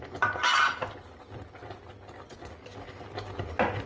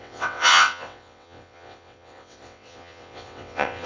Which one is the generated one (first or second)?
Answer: second